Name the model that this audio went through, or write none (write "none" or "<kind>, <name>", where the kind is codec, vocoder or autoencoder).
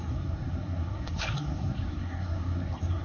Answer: codec, SNAC